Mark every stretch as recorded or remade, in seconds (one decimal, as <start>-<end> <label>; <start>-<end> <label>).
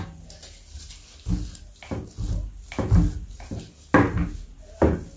0.0-5.2 recorded